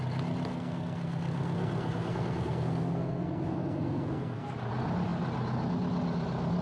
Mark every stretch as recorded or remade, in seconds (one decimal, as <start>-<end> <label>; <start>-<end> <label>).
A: 0.0-0.5 recorded; 0.5-4.5 remade; 4.5-6.6 recorded